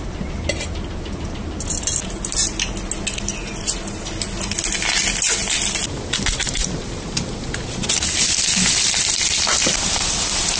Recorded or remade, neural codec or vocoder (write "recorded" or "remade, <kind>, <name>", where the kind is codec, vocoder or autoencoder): recorded